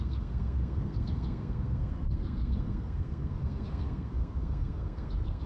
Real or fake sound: fake